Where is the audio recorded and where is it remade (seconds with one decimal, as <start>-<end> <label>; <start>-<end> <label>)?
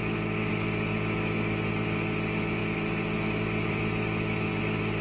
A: 0.0-2.6 recorded; 2.6-4.6 remade; 4.6-5.0 recorded